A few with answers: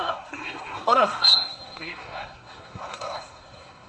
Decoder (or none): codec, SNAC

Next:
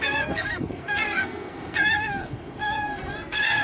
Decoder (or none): codec, SNAC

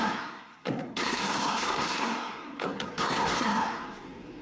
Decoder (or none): codec, SNAC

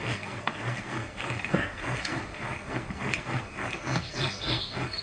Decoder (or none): codec, SNAC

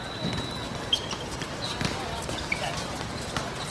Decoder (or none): none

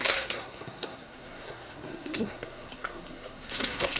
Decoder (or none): codec, SNAC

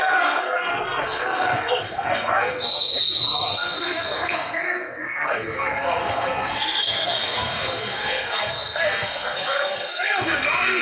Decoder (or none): codec, SNAC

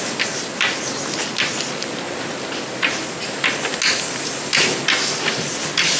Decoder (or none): none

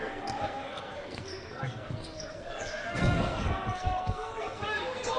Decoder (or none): codec, SNAC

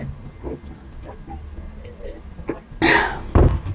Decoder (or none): none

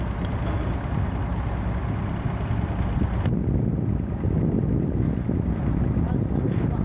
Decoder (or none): none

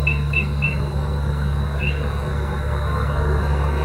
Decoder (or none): codec, SNAC